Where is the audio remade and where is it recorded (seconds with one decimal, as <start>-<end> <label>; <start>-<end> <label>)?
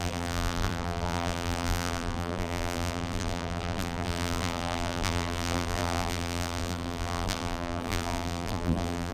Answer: 0.0-9.1 remade